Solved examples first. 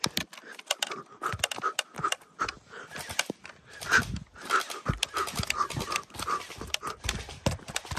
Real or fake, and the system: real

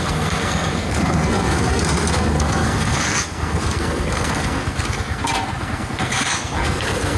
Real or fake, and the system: fake, codec, SNAC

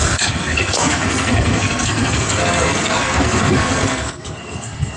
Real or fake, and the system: fake, codec, SNAC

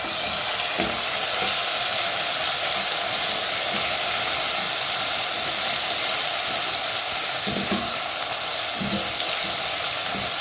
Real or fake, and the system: real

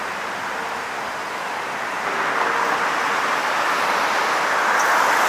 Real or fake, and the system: real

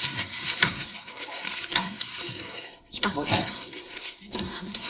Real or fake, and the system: fake, codec, SNAC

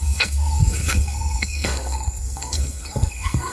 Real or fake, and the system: fake, codec, SNAC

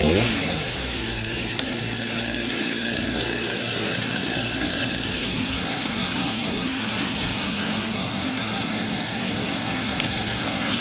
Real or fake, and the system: fake, codec, SNAC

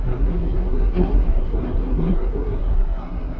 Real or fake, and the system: fake, codec, SNAC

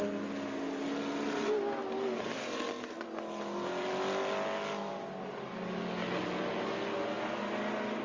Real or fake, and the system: real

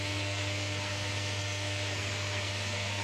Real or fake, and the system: fake, codec, SNAC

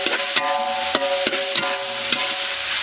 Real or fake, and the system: real